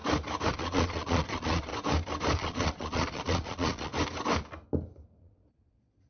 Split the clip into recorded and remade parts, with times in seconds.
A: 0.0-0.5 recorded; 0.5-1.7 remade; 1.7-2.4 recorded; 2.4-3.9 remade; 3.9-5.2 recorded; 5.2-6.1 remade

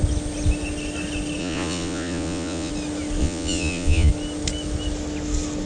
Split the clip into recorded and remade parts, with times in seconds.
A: 0.0-1.4 recorded; 1.4-2.7 remade; 2.7-3.2 recorded; 3.2-4.1 remade; 4.1-5.7 recorded

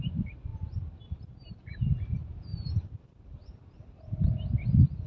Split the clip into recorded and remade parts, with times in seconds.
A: 0.0-5.1 recorded

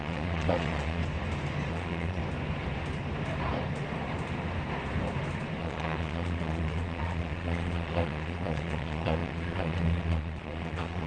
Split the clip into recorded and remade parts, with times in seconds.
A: 0.0-1.0 remade; 1.0-1.7 recorded; 1.7-2.2 remade; 2.2-5.6 recorded; 5.6-11.1 remade

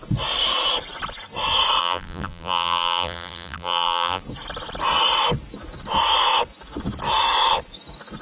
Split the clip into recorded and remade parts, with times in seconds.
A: 0.0-1.8 recorded; 1.8-4.2 remade; 4.2-8.2 recorded

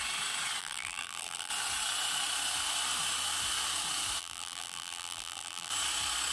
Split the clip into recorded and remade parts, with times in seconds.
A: 0.0-0.6 recorded; 0.6-1.5 remade; 1.5-4.2 recorded; 4.2-5.7 remade; 5.7-6.3 recorded

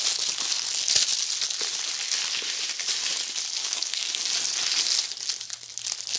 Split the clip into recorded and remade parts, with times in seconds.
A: 0.0-3.6 recorded; 3.6-4.2 remade; 4.2-6.2 recorded